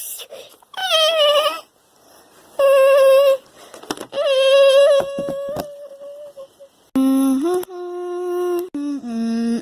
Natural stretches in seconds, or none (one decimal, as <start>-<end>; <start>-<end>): 0.0-4.8; 5.6-9.6